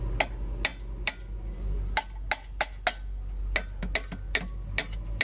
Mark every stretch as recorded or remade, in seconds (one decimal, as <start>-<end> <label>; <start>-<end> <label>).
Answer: 0.0-5.2 recorded